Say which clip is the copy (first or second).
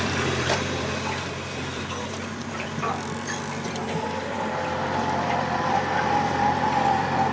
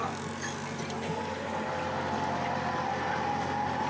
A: first